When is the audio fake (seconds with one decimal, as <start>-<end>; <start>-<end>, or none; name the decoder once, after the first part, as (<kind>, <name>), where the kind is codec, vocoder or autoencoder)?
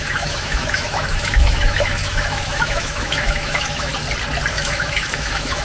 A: 0.0-3.9 (autoencoder, DAC-VAE); 4.5-5.6